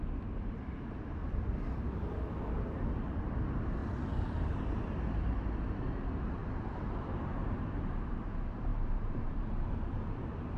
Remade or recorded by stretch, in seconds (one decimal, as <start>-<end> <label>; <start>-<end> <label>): 0.0-3.8 recorded; 3.8-5.2 remade; 5.2-6.4 recorded; 6.4-8.2 remade; 8.2-8.7 recorded; 8.7-9.7 remade; 9.7-10.6 recorded

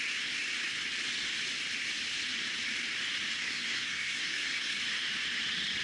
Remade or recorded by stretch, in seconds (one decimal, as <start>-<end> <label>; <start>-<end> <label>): 0.0-3.4 recorded; 3.4-4.8 remade; 4.8-5.8 recorded

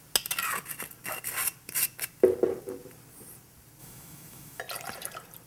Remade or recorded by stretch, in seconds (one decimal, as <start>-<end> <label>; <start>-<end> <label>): 0.0-3.8 recorded; 3.8-4.6 remade; 4.6-5.5 recorded